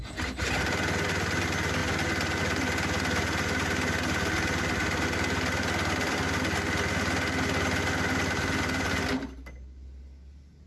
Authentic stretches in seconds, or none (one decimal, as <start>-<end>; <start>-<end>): 0.0-10.7